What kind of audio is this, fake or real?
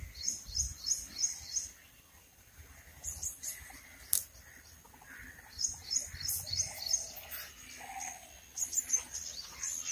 real